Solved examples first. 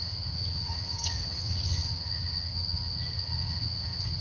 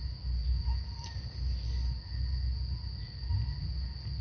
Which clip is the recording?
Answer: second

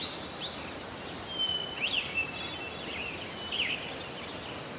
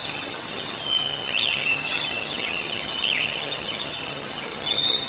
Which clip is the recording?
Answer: first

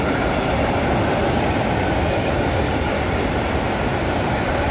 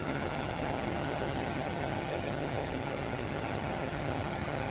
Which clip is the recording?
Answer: first